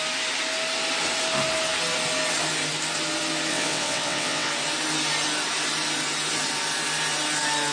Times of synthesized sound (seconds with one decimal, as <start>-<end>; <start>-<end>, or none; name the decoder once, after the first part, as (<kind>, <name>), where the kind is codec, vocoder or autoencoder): 3.5-4.5 (vocoder, WaveNeXt)